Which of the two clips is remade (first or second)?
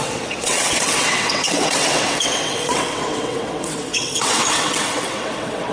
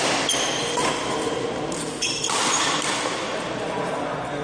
first